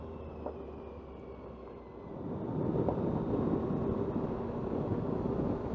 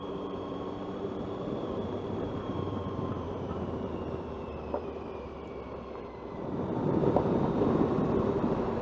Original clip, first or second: first